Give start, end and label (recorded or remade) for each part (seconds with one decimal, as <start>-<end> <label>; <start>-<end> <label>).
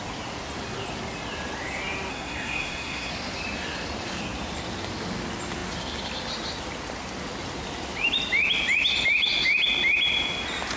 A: 0.0-2.1 recorded; 2.1-3.1 remade; 3.1-10.8 recorded